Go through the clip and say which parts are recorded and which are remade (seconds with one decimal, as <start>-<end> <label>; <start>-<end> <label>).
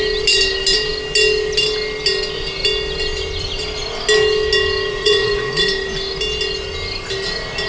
0.0-4.9 recorded; 4.9-5.6 remade; 5.6-7.7 recorded